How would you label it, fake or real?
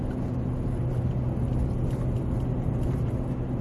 real